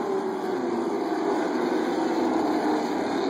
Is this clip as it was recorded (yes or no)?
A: yes